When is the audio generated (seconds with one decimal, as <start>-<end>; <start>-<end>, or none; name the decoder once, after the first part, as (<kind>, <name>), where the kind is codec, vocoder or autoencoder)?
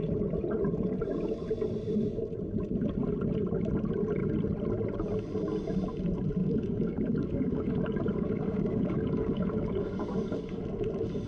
6.4-10.6 (codec, DAC)